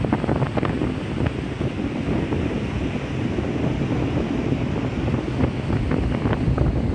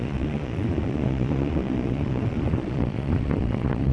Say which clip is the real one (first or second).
first